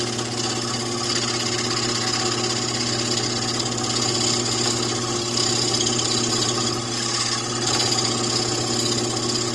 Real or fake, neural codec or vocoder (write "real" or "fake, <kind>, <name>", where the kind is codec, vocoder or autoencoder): real